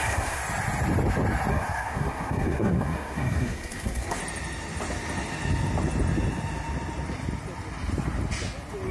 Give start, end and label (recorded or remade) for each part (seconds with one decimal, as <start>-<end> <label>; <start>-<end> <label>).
0.0-0.4 remade; 0.4-1.5 recorded; 1.5-4.2 remade; 4.2-8.9 recorded